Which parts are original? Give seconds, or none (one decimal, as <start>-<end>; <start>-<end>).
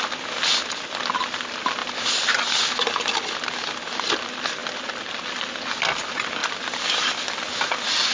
0.0-8.1